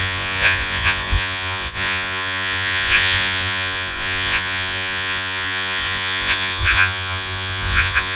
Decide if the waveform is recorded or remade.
remade